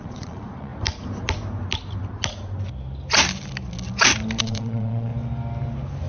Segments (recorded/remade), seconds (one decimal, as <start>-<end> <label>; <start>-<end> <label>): 0.0-0.7 remade; 0.7-4.4 recorded; 4.4-5.1 remade; 5.1-6.1 recorded

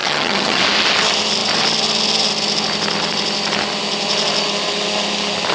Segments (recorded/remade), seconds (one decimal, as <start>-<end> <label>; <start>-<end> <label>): 0.0-0.6 remade; 0.6-5.5 recorded

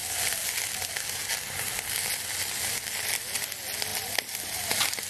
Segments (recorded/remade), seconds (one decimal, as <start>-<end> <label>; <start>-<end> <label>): 0.0-5.1 recorded

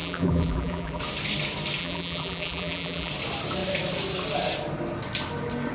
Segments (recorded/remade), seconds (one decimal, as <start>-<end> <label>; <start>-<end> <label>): 0.0-1.0 remade; 1.0-1.8 recorded; 1.8-3.1 remade; 3.1-5.7 recorded

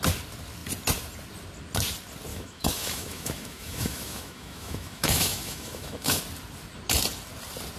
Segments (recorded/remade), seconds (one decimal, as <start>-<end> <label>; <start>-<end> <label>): 0.0-2.3 recorded; 2.3-6.2 remade; 6.2-7.8 recorded

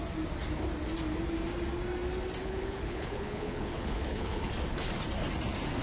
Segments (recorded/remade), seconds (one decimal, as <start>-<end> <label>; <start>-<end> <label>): 0.0-2.4 recorded; 2.4-4.5 remade; 4.5-5.8 recorded

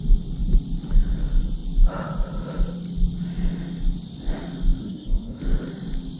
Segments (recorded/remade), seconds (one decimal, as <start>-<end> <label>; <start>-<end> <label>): 0.0-4.8 recorded; 4.8-5.4 remade; 5.4-6.2 recorded

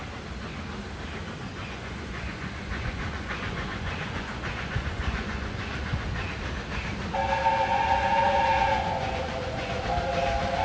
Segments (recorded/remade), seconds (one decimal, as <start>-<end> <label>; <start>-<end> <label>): 0.0-1.4 recorded; 1.4-6.3 remade; 6.3-7.7 recorded; 7.7-9.8 remade; 9.8-10.6 recorded